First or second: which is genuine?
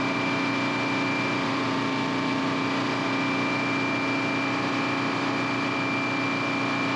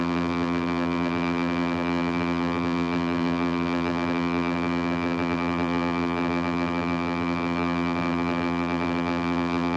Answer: first